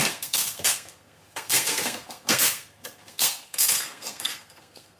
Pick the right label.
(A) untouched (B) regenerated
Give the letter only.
B